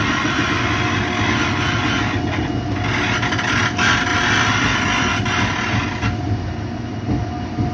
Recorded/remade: recorded